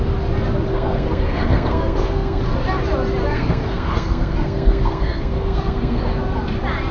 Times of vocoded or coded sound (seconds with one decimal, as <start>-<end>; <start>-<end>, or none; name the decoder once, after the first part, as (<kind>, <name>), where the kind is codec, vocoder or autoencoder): 0.7-2.4 (codec, SNAC); 3.2-6.0